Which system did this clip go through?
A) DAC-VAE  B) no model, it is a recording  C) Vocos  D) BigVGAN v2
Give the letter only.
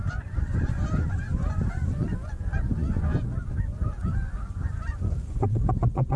C